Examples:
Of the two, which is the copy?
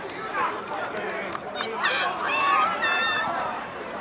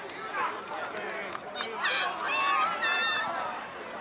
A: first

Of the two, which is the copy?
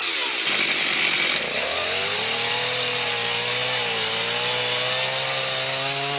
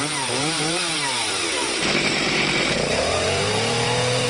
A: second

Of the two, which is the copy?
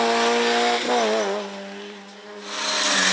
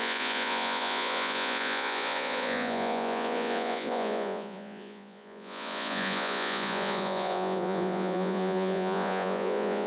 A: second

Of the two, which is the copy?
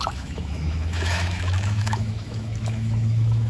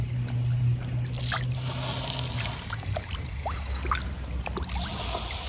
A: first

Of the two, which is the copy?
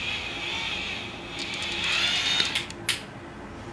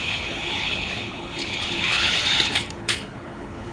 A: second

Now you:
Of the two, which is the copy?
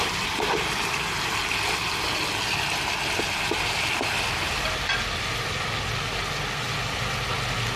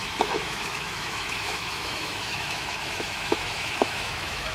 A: second